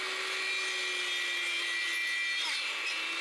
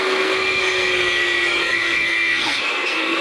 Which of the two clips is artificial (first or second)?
second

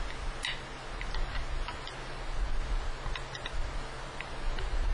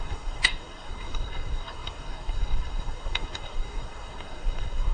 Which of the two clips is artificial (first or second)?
second